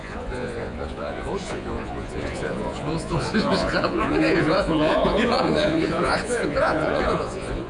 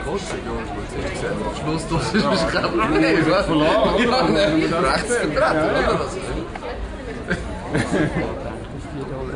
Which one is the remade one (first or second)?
first